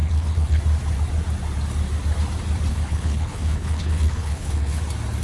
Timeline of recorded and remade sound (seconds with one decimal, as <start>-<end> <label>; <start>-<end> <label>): 0.0-0.6 remade; 0.6-2.7 recorded; 2.7-4.8 remade; 4.8-5.2 recorded